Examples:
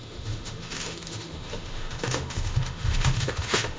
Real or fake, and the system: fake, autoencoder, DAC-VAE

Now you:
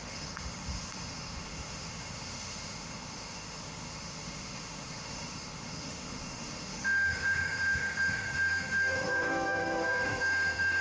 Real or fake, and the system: fake, autoencoder, DAC-VAE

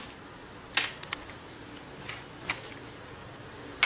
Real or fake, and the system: real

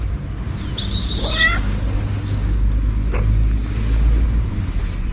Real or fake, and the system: real